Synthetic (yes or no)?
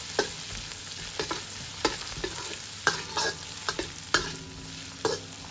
no